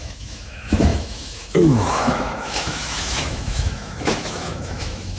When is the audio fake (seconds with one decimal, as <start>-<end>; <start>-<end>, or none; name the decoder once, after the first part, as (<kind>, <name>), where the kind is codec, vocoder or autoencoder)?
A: 0.0-5.2 (autoencoder, DAC-VAE)